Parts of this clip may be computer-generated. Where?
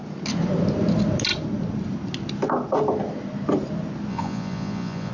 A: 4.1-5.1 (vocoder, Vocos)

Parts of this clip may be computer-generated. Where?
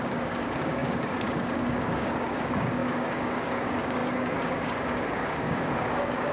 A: 0.0-6.3 (codec, DAC)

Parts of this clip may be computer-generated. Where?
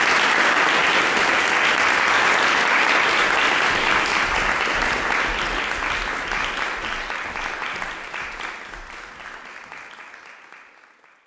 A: none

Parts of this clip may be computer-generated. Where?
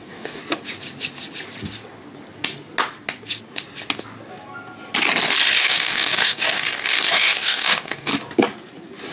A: 0.0-0.4 (codec, DAC); 5.5-8.1